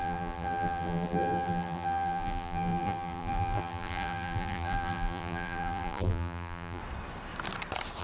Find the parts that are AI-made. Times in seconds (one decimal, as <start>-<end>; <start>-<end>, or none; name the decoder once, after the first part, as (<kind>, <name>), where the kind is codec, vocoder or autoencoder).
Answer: 0.0-6.8 (vocoder, BigVGAN v2)